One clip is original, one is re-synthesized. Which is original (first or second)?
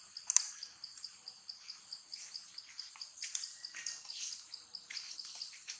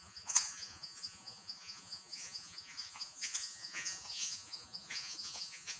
first